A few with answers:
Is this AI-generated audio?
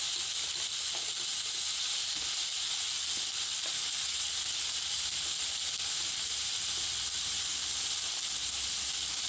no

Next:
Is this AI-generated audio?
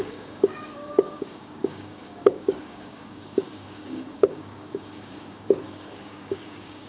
yes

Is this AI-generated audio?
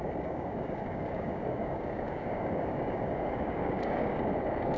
yes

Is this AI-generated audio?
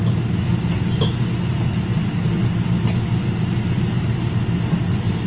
no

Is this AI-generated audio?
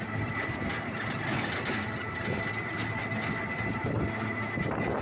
no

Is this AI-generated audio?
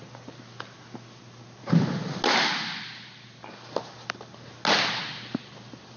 no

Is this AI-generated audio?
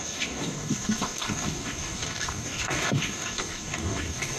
yes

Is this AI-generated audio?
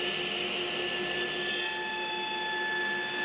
no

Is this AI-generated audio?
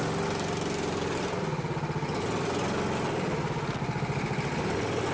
no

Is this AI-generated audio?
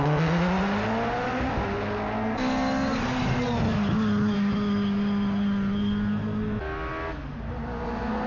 no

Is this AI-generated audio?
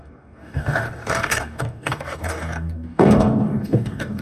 yes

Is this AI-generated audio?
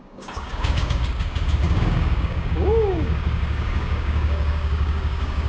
yes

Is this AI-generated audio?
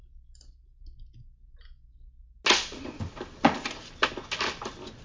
no